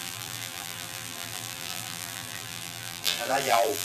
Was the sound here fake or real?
fake